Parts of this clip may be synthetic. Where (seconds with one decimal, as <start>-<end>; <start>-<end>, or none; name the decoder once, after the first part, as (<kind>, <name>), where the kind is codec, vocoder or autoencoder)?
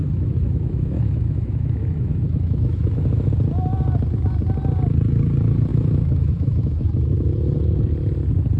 0.0-3.3 (autoencoder, DAC-VAE); 5.7-6.8